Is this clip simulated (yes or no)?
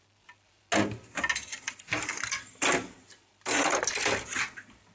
no